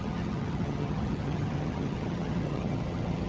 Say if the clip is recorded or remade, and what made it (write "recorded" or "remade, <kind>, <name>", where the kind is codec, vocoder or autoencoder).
remade, vocoder, HiFi-GAN